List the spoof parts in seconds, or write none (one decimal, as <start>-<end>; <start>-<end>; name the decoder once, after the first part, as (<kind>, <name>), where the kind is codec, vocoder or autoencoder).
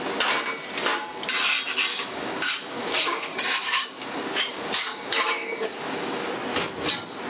1.9-6.3 (codec, DAC)